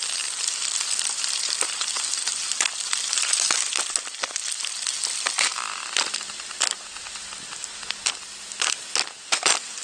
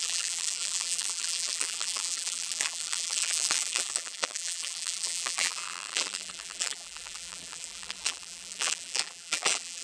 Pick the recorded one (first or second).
first